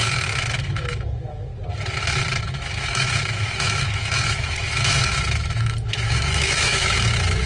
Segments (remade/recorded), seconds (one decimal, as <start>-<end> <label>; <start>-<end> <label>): 0.0-1.5 remade; 1.5-2.4 recorded; 2.4-7.5 remade